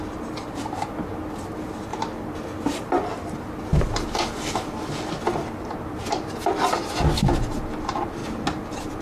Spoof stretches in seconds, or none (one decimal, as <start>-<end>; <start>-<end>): 1.9-2.6; 3.7-6.5